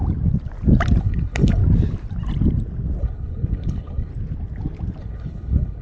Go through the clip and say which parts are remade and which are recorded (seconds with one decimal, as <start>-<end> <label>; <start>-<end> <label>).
0.0-1.0 recorded; 1.0-1.6 remade; 1.6-3.0 recorded; 3.0-4.1 remade; 4.1-5.0 recorded; 5.0-5.8 remade